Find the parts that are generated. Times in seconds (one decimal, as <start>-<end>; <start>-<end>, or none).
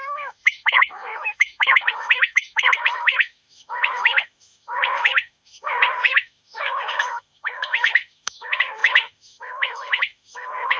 0.0-10.8